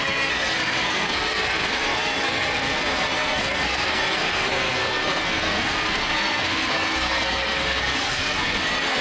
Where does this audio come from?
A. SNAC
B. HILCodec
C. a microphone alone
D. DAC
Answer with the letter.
A